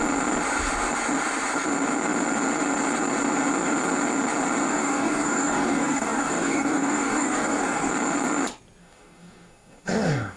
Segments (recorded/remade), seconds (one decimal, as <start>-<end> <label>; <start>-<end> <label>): 0.0-4.7 recorded; 4.7-7.9 remade; 7.9-8.8 recorded; 8.8-10.4 remade